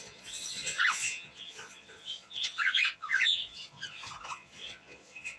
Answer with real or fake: fake